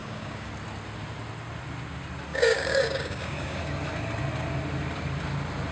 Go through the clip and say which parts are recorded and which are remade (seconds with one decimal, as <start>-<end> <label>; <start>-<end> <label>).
0.0-0.5 remade; 0.5-2.3 recorded; 2.3-3.6 remade; 3.6-5.7 recorded